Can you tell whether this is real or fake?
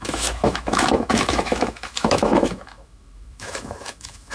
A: fake